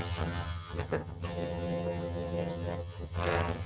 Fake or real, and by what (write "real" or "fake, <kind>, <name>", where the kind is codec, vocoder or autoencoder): fake, vocoder, HiFi-GAN